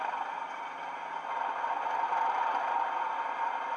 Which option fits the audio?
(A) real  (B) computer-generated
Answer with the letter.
A